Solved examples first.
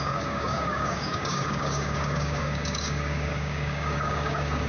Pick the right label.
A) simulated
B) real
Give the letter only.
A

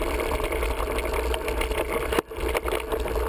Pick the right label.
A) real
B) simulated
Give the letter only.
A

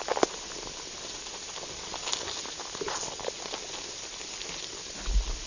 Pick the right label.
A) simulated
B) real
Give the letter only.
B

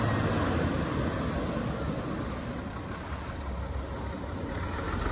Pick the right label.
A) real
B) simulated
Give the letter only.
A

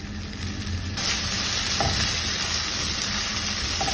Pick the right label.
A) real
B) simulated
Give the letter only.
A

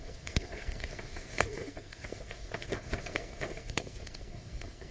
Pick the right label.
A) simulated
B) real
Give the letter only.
A